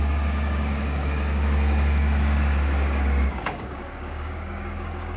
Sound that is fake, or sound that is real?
fake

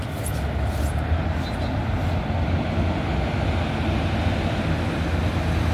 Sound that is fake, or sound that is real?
real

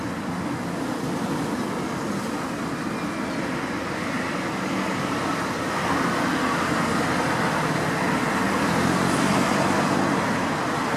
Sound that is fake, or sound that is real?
real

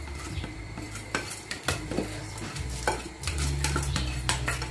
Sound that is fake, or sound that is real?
fake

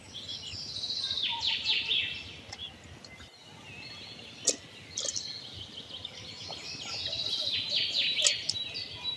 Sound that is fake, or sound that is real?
real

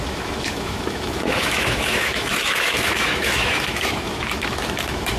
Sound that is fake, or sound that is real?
fake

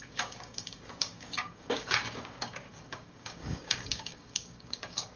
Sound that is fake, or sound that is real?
fake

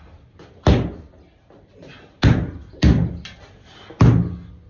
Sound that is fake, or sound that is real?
real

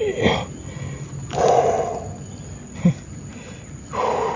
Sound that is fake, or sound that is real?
real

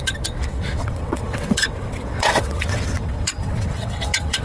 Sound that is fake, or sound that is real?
fake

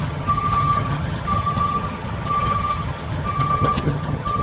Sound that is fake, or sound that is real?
fake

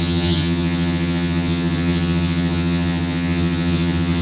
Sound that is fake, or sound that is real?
fake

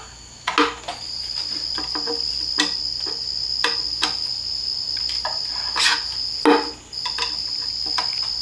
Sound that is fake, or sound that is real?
real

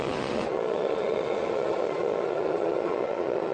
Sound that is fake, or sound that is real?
fake